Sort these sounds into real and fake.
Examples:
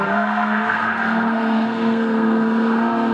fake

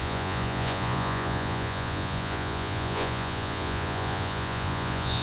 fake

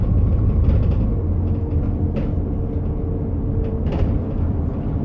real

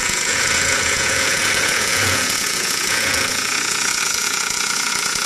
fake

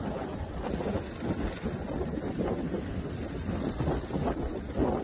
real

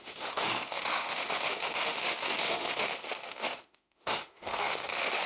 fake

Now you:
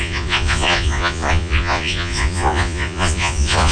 fake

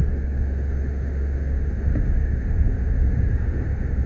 fake